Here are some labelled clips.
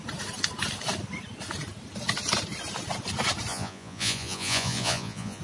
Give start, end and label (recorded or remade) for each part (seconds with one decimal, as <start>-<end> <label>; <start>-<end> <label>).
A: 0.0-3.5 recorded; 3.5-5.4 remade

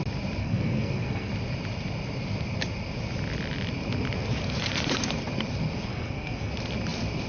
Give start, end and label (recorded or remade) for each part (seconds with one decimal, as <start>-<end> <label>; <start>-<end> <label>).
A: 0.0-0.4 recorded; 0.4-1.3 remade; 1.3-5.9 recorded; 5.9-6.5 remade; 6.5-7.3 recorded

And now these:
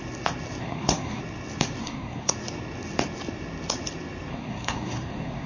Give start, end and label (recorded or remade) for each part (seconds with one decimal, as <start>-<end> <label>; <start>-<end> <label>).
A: 0.0-0.6 recorded; 0.6-1.2 remade; 1.2-1.8 recorded; 1.8-2.3 remade; 2.3-4.3 recorded; 4.3-5.5 remade